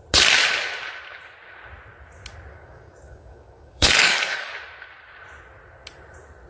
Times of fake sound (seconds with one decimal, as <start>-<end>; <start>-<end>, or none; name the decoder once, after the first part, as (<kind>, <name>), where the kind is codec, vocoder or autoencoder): 2.5-4.5 (codec, DAC)